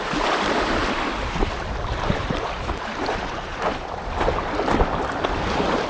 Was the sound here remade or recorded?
remade